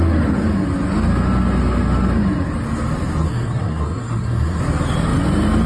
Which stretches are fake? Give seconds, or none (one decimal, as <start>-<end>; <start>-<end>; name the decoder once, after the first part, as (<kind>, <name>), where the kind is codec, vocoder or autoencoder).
3.2-4.6 (codec, SNAC)